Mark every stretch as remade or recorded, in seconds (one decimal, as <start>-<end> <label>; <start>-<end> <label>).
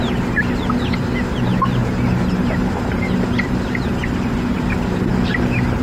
0.0-1.8 recorded; 1.8-3.0 remade; 3.0-5.8 recorded